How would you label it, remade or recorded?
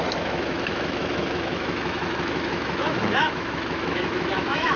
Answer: remade